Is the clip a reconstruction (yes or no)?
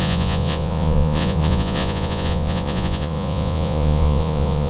yes